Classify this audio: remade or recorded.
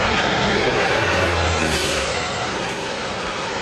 remade